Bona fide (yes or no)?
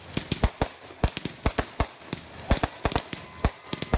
yes